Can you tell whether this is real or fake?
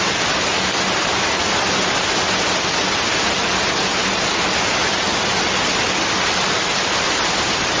real